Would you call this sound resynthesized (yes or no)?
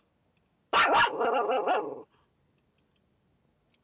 no